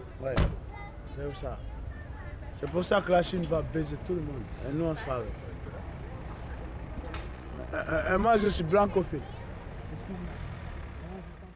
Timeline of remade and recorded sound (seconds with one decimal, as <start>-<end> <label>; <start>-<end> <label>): 0.0-7.3 recorded; 7.3-8.6 remade; 8.6-11.6 recorded